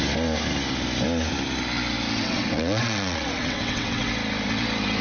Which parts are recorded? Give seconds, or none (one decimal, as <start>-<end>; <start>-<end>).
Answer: 0.0-2.2; 4.1-5.0